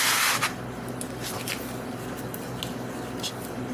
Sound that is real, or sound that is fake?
real